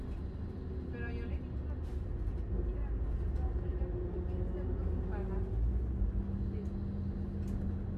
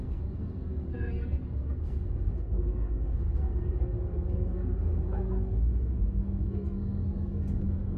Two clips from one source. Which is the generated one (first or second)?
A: second